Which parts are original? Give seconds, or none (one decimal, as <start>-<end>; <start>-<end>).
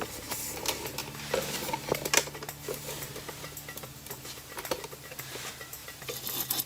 0.0-6.7